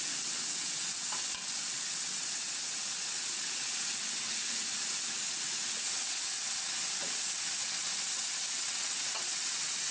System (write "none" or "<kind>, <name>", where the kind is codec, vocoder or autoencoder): vocoder, WaveNeXt